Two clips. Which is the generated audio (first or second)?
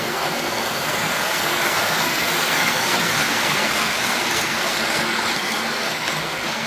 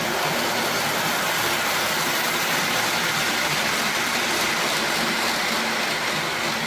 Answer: first